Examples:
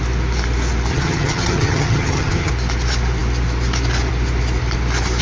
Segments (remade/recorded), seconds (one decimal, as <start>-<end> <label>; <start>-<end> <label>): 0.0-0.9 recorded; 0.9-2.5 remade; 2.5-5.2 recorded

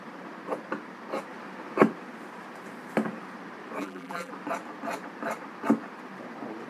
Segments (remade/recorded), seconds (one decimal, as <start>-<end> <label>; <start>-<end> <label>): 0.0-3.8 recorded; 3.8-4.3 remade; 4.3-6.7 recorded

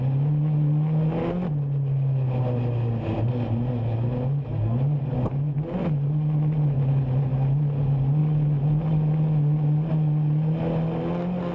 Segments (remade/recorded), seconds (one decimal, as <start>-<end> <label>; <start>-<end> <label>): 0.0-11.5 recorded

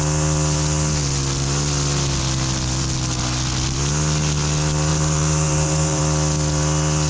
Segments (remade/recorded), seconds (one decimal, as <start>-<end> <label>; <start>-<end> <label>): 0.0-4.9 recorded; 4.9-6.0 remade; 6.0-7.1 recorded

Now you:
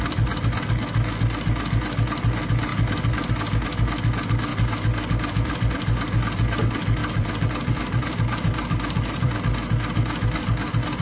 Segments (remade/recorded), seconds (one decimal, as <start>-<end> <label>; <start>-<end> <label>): 0.0-7.0 recorded; 7.0-9.4 remade; 9.4-11.0 recorded

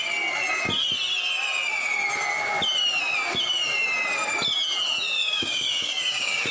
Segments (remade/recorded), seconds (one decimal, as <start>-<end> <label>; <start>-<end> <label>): 0.0-5.2 recorded; 5.2-6.5 remade

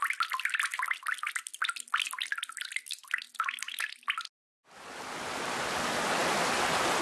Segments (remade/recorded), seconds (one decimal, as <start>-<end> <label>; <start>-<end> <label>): 0.0-7.0 recorded